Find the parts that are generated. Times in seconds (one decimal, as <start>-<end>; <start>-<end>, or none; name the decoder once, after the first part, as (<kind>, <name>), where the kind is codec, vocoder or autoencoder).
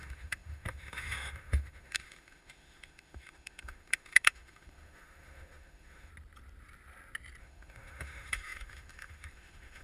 0.0-6.1 (autoencoder, DAC-VAE); 7.4-9.8